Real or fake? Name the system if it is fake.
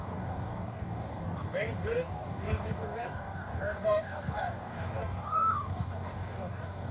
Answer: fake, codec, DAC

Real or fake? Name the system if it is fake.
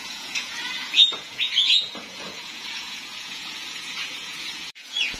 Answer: fake, vocoder, Vocos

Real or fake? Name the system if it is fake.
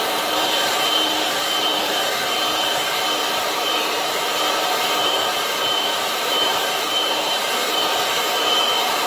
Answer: fake, vocoder, BigVGAN v2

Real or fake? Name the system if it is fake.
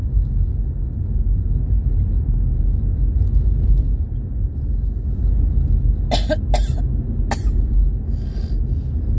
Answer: real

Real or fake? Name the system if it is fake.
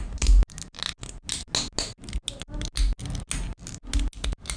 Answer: real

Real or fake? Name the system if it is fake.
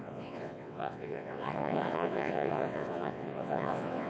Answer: fake, vocoder, WaveNeXt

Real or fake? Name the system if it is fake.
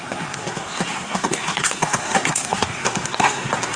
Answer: fake, codec, SNAC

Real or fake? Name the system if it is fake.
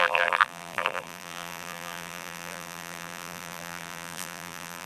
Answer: fake, vocoder, BigVGAN v2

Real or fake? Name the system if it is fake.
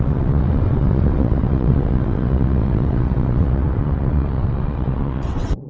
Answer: fake, vocoder, WaveNeXt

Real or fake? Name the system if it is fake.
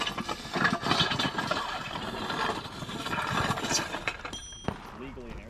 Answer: real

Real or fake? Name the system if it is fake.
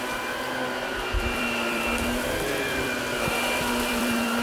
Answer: fake, vocoder, BigVGAN v2